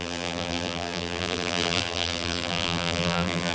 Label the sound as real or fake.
fake